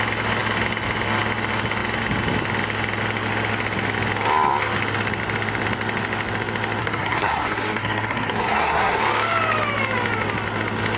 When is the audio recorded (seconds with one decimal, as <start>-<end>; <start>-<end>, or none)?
0.0-6.8; 9.0-11.0